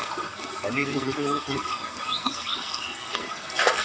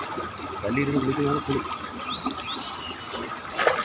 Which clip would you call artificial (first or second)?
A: first